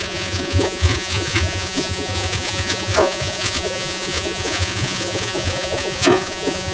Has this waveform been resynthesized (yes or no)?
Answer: yes